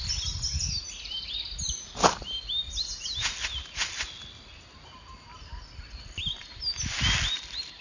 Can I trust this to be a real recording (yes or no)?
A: yes